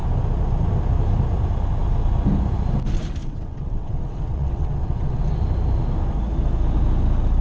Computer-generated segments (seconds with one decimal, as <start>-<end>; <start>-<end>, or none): 3.2-5.2